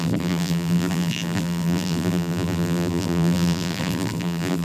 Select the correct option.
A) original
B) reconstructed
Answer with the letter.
B